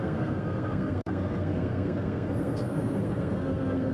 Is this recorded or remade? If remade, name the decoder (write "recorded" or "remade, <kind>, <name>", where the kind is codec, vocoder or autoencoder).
remade, codec, SNAC